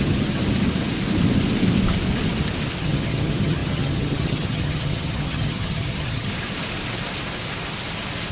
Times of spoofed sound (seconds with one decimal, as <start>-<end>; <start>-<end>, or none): 0.0-0.4; 2.8-6.3